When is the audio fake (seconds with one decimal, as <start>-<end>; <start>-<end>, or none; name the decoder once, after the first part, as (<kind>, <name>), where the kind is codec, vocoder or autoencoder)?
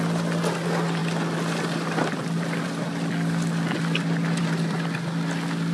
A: none